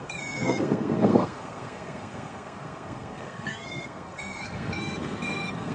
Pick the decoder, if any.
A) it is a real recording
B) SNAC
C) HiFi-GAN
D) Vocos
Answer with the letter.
B